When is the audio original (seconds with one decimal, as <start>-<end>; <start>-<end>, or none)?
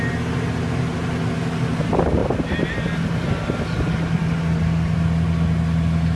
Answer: 0.0-6.2